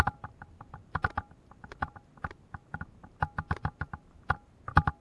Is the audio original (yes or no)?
yes